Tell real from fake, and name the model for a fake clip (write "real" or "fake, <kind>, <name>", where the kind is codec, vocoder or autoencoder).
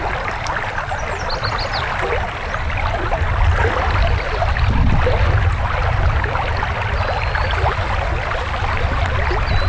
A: real